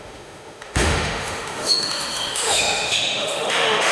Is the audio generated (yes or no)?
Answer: yes